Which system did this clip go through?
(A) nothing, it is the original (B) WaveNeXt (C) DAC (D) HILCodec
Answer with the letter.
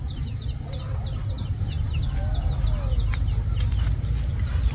A